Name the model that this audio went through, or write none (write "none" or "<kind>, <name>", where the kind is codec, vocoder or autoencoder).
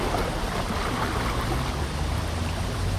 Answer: none